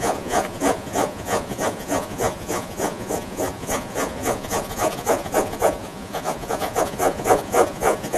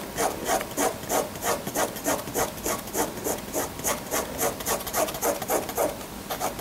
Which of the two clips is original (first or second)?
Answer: second